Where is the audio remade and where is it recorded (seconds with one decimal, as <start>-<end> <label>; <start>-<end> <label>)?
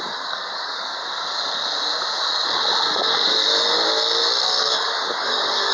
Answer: 0.0-1.0 remade; 1.0-4.4 recorded; 4.4-5.7 remade